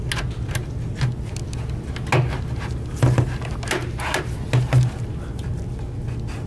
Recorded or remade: recorded